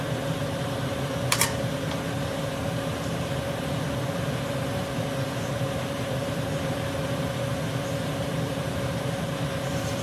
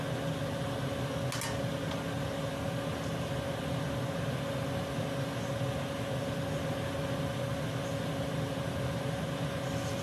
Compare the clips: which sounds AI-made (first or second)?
first